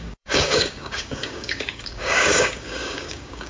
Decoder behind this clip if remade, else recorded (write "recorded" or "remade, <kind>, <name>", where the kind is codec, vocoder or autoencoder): remade, codec, DAC